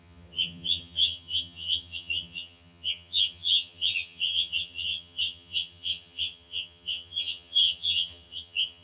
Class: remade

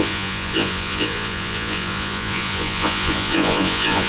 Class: remade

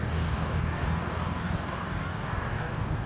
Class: remade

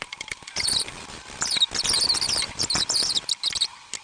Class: recorded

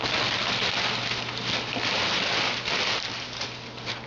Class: recorded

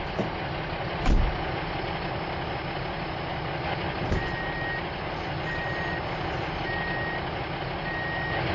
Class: recorded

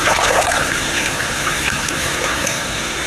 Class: remade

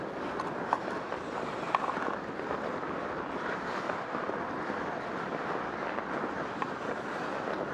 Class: recorded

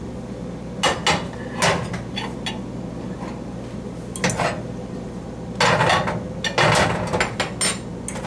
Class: recorded